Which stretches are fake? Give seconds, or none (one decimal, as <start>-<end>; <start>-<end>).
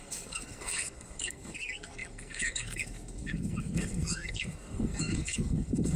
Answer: 0.0-6.0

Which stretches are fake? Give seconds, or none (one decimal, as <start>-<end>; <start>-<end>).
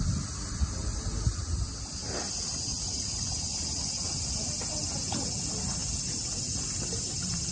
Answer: 2.7-4.4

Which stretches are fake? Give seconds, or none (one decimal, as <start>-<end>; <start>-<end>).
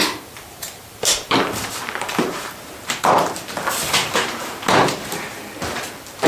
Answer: 0.0-3.1; 4.0-4.5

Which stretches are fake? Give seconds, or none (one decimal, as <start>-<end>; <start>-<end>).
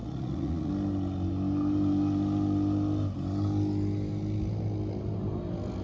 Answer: 0.0-0.7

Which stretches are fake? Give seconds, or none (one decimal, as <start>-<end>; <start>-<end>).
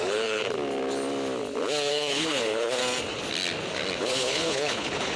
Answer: 0.0-0.4; 1.9-2.8; 4.0-5.2